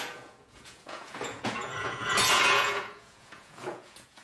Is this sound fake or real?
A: fake